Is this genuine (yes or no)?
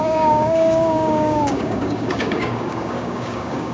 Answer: no